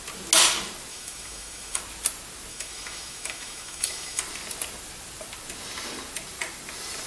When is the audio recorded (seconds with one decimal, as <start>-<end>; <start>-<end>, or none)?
0.0-0.9; 1.8-2.5; 4.2-7.1